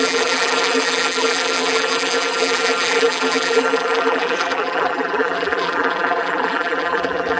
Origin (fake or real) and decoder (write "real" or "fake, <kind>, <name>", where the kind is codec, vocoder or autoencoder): fake, vocoder, BigVGAN v2